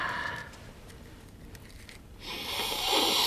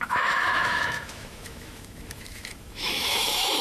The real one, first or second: first